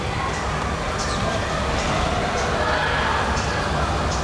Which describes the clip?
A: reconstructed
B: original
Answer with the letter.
B